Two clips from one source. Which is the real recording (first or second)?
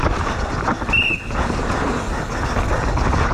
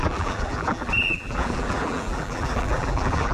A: first